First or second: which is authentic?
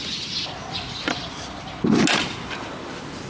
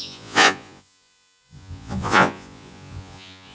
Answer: first